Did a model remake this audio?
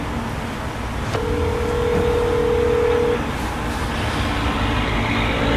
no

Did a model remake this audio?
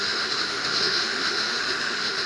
yes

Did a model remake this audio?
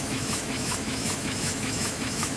yes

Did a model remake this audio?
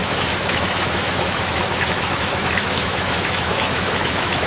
yes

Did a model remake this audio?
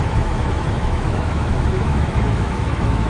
yes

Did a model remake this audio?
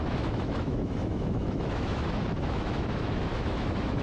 yes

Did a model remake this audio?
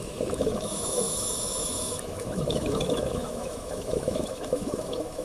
yes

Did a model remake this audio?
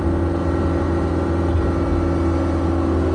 no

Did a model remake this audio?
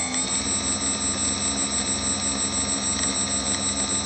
no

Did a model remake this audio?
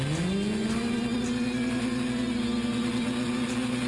no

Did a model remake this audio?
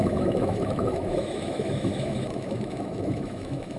yes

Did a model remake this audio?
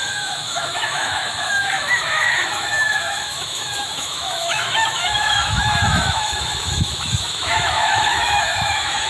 yes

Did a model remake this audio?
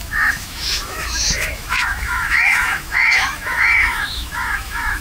yes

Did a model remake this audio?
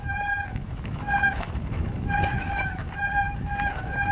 yes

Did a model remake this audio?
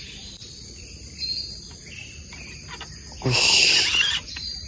no